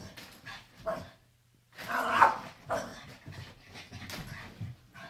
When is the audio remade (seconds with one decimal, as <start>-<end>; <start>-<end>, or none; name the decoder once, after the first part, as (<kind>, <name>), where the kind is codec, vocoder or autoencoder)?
2.9-3.5 (vocoder, BigVGAN v2)